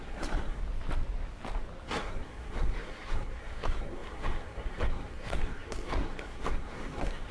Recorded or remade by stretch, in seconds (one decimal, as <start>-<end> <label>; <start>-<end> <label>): 0.0-0.6 remade; 0.6-1.9 recorded; 1.9-7.3 remade